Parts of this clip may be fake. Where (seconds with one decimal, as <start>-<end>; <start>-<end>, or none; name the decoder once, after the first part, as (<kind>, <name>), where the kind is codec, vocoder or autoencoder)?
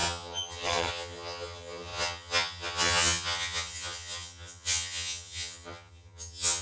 0.0-6.6 (vocoder, HiFi-GAN)